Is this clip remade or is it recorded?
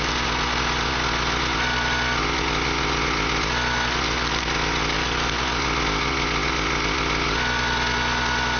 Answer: recorded